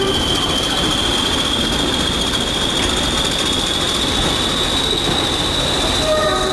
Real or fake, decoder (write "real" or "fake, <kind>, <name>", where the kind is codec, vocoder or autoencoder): real